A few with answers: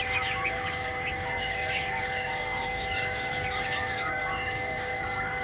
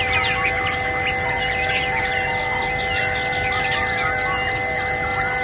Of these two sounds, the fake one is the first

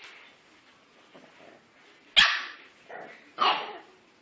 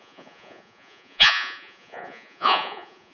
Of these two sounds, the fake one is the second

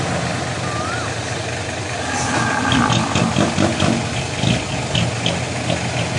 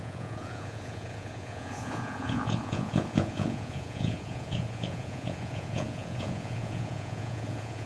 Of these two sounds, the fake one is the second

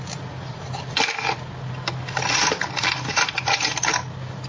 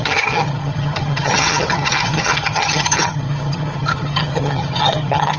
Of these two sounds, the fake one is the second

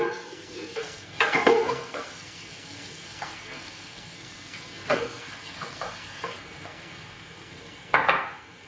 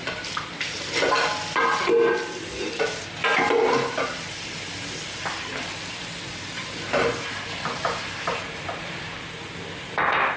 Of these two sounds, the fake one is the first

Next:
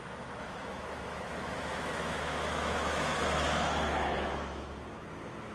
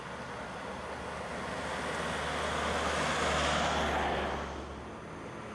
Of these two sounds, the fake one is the first